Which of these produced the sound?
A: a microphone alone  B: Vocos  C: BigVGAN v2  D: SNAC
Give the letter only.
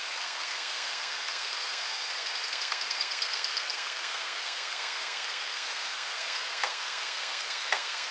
D